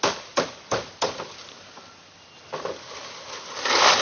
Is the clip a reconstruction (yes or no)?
no